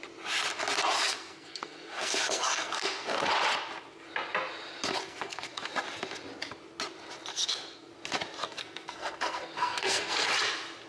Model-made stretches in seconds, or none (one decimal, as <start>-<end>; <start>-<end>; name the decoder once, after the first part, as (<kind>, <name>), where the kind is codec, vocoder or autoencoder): 1.1-3.3 (codec, SNAC); 5.0-5.7; 7.3-7.9; 8.4-10.3